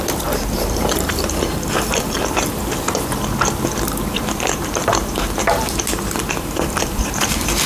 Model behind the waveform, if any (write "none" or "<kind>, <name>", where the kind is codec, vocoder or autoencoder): vocoder, BigVGAN v2